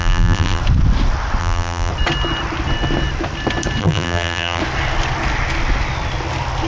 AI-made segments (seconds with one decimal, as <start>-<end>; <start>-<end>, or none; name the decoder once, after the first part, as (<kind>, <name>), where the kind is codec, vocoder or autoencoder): 0.0-0.6 (vocoder, BigVGAN v2); 1.4-1.9; 3.8-4.6